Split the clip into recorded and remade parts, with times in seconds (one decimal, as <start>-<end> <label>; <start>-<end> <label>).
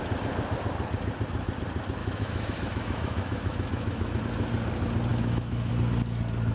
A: 0.0-2.0 recorded; 2.0-4.2 remade; 4.2-5.1 recorded; 5.1-5.7 remade; 5.7-6.5 recorded